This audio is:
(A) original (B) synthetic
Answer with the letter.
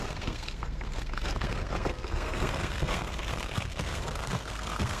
B